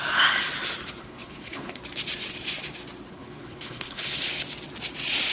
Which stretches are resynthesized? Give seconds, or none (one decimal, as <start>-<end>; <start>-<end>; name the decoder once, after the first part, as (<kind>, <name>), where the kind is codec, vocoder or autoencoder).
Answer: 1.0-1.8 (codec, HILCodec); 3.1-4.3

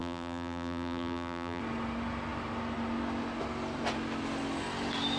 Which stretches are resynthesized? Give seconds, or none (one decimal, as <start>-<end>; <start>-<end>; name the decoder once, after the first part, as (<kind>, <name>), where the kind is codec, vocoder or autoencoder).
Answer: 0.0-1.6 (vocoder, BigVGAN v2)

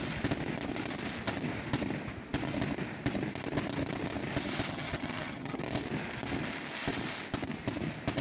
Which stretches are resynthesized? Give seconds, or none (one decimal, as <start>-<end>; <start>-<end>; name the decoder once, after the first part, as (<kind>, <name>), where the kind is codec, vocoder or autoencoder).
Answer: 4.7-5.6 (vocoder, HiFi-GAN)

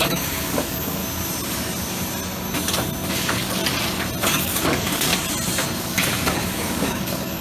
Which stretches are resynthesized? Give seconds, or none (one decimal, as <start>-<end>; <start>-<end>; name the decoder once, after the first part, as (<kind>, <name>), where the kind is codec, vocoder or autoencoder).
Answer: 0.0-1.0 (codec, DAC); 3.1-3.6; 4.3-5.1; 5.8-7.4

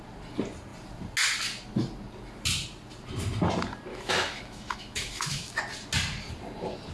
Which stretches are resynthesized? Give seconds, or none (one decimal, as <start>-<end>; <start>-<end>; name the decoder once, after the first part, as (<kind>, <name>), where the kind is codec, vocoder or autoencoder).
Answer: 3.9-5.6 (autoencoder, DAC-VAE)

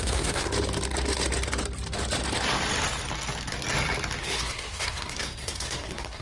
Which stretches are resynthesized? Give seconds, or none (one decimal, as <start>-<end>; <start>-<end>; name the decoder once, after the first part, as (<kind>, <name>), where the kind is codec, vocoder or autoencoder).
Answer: 0.0-0.5 (codec, SNAC); 4.2-6.2

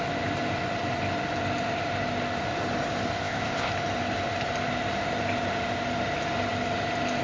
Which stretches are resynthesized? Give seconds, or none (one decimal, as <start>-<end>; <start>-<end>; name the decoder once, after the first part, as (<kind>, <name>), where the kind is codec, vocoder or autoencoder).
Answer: 3.2-3.7 (codec, ZipCodec)